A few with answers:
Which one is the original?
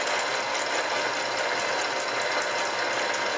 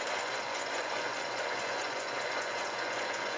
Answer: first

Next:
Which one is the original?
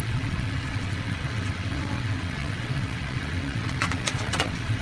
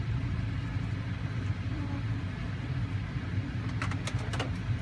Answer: second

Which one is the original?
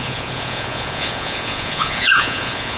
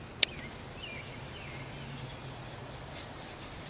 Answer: second